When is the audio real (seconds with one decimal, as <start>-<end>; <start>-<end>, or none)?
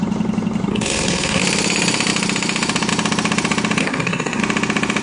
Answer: 0.0-0.7; 1.4-3.8; 4.4-5.0